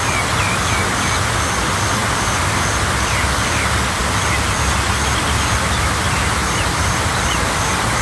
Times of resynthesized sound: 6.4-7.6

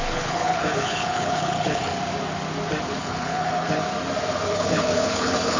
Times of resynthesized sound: 0.0-1.9; 2.9-3.8; 4.5-5.6

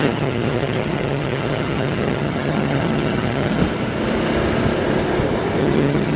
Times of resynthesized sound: 0.0-3.6; 5.6-6.2

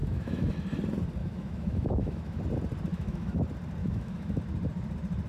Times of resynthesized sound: 0.0-0.5; 1.2-2.4; 2.9-3.4; 3.8-4.4

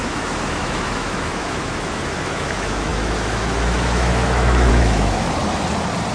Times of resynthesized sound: 0.0-5.4

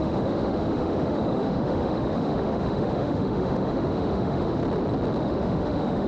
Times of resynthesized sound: 0.0-4.6; 5.2-6.1